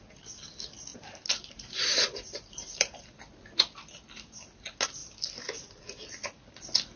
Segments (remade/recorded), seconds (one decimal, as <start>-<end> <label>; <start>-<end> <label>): 0.0-0.9 recorded; 0.9-3.0 remade; 3.0-7.0 recorded